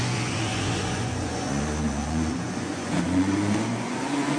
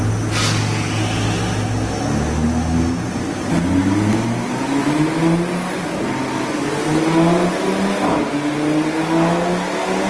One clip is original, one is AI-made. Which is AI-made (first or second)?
first